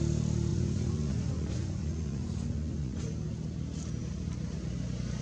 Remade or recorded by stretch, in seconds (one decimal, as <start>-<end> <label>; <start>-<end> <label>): 0.0-0.5 recorded; 0.5-3.0 remade; 3.0-5.2 recorded